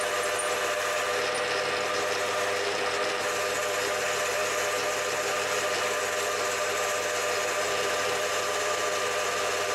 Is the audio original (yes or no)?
yes